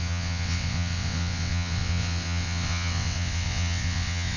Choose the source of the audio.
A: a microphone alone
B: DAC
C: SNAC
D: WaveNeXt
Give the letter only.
D